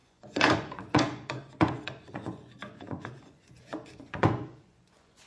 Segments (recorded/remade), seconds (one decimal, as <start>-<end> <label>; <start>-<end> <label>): 0.0-5.3 remade